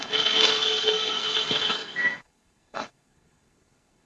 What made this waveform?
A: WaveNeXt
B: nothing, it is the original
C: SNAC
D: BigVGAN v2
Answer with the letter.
C